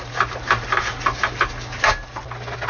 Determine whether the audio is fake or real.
real